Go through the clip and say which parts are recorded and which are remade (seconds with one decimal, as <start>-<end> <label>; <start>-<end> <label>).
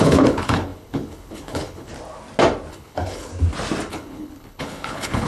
0.0-1.9 remade; 1.9-2.7 recorded; 2.7-3.3 remade; 3.3-3.9 recorded; 3.9-5.3 remade